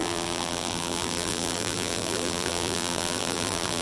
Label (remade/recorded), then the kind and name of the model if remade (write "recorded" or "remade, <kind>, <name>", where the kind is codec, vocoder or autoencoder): remade, vocoder, BigVGAN v2